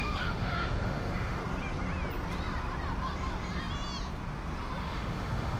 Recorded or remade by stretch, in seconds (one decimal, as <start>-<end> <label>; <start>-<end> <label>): 0.0-1.4 remade; 1.4-4.8 recorded; 4.8-5.6 remade